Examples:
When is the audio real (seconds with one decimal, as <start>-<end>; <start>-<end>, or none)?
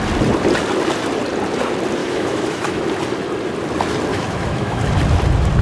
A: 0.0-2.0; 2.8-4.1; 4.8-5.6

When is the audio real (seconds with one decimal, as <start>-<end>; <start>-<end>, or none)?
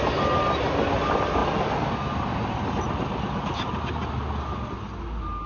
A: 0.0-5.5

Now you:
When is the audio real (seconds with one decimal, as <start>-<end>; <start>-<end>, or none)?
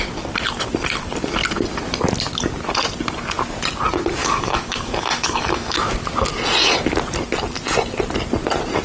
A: 0.0-4.2; 5.9-8.8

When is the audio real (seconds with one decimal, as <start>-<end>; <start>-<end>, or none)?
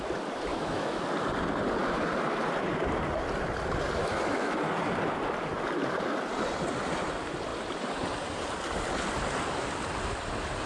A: 0.0-0.5; 1.0-4.0; 4.6-10.7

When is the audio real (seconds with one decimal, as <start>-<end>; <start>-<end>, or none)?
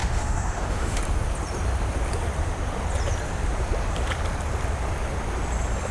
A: 1.0-5.9